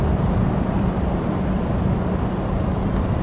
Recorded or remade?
remade